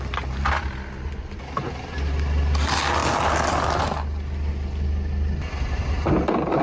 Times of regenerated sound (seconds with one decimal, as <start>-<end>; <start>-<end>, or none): none